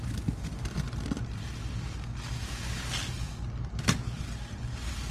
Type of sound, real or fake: real